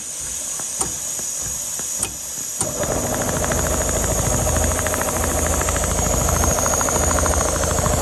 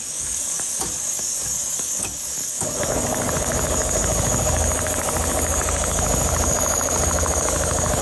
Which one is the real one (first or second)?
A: first